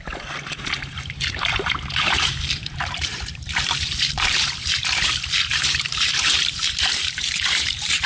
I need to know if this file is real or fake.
fake